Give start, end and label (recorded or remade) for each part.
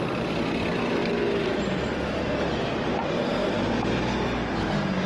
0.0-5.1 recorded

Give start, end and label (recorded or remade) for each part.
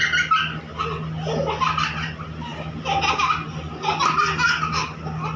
0.0-5.4 recorded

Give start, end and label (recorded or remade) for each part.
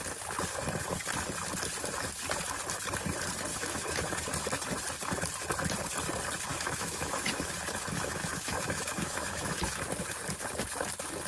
0.0-3.5 recorded; 3.5-4.2 remade; 4.2-6.5 recorded; 6.5-7.5 remade; 7.5-7.9 recorded; 7.9-9.8 remade; 9.8-11.3 recorded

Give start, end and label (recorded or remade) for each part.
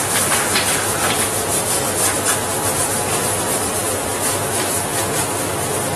0.0-3.8 recorded; 3.8-5.0 remade; 5.0-6.0 recorded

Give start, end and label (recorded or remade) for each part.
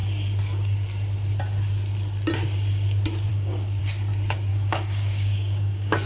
0.0-3.3 recorded; 3.3-3.8 remade; 3.8-4.5 recorded; 4.5-6.1 remade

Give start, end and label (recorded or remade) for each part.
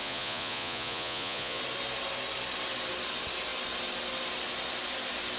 0.0-1.6 remade; 1.6-5.4 recorded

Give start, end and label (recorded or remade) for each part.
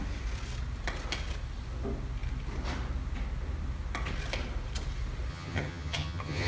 0.0-5.3 recorded; 5.3-6.5 remade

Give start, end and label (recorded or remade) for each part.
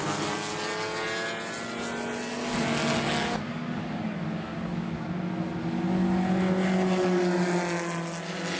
0.0-3.5 recorded; 3.5-4.9 remade; 4.9-8.6 recorded